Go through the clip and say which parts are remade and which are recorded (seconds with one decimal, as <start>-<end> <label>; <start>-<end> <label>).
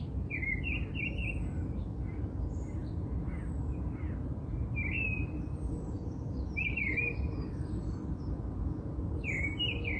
0.0-10.0 recorded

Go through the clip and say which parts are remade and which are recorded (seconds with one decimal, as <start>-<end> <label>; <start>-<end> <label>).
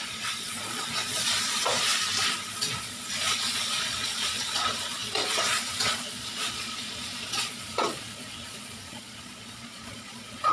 0.0-1.9 remade; 1.9-2.5 recorded; 2.5-10.5 remade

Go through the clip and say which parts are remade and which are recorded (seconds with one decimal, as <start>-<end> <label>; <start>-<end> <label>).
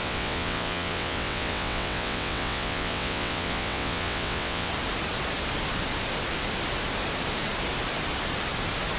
0.0-4.7 remade; 4.7-9.0 recorded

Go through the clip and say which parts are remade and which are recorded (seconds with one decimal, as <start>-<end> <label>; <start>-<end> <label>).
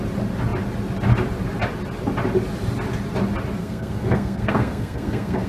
0.0-3.6 recorded; 3.6-5.5 remade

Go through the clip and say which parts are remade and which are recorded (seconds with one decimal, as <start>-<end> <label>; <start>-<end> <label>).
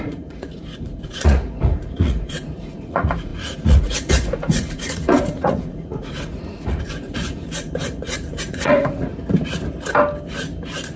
0.0-9.1 remade; 9.1-11.0 recorded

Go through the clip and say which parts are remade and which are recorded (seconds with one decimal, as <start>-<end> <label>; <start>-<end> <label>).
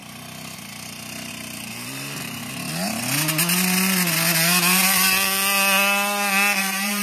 0.0-1.3 recorded; 1.3-2.4 remade; 2.4-6.6 recorded; 6.6-7.0 remade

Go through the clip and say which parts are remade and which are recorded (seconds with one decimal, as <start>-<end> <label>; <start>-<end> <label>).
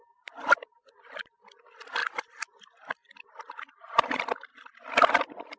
0.0-5.6 recorded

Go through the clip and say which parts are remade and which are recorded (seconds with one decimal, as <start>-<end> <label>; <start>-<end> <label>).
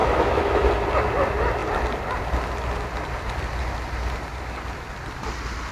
0.0-0.7 remade; 0.7-5.7 recorded